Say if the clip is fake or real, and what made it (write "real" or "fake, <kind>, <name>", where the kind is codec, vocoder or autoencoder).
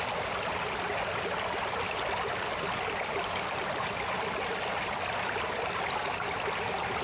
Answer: real